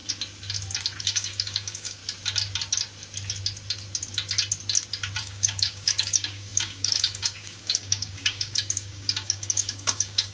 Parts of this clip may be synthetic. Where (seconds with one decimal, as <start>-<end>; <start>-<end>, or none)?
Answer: 1.0-2.0; 5.2-10.3